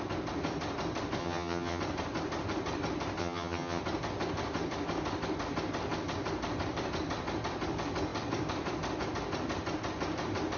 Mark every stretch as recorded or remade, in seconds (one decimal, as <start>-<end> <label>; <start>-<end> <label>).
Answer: 0.0-1.2 recorded; 1.2-1.8 remade; 1.8-3.2 recorded; 3.2-3.8 remade; 3.8-10.6 recorded